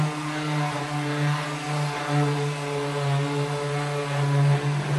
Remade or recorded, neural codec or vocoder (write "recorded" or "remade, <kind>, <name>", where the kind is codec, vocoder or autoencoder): recorded